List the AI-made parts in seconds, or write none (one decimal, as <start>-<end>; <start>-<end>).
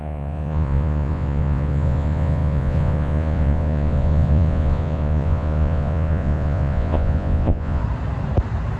0.0-7.8